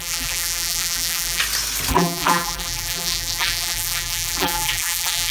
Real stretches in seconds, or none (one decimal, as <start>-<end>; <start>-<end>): 1.4-1.9